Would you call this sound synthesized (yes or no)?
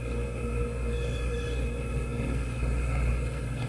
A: yes